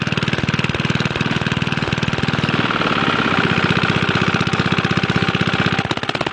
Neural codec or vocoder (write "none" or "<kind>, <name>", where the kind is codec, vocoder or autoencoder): none